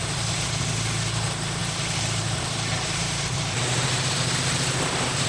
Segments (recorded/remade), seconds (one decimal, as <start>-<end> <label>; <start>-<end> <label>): 0.0-1.6 recorded; 1.6-4.8 remade; 4.8-5.3 recorded

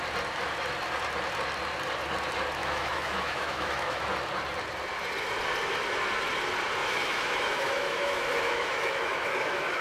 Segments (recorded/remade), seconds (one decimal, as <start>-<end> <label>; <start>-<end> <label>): 0.0-2.6 recorded; 2.6-4.0 remade; 4.0-6.8 recorded; 6.8-9.8 remade

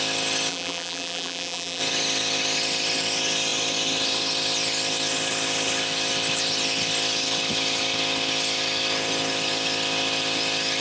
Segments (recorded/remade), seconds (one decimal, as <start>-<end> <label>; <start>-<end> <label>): 0.0-0.5 recorded; 0.5-1.8 remade; 1.8-10.8 recorded

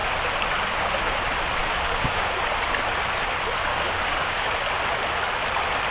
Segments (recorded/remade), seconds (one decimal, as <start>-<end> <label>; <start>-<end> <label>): 0.0-1.6 recorded; 1.6-2.4 remade; 2.4-3.7 recorded; 3.7-4.5 remade; 4.5-5.9 recorded

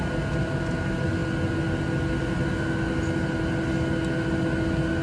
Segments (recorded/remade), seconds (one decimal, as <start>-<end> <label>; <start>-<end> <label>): 0.0-5.0 recorded

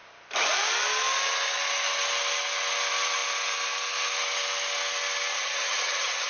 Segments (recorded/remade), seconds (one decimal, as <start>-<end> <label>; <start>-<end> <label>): 0.0-5.3 recorded; 5.3-6.3 remade

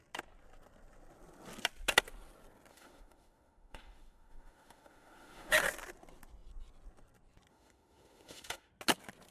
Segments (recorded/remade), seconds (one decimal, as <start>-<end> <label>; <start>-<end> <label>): 0.0-2.7 recorded; 2.7-5.5 remade; 5.5-7.5 recorded; 7.5-8.7 remade; 8.7-9.3 recorded